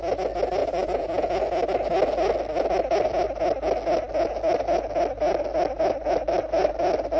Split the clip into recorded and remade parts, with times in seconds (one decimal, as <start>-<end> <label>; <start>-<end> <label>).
0.0-0.6 recorded; 0.6-1.4 remade; 1.4-7.2 recorded